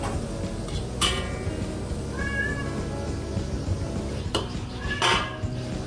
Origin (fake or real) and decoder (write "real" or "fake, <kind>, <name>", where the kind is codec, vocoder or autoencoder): real